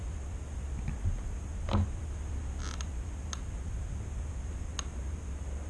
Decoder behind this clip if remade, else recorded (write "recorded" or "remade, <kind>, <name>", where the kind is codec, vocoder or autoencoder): recorded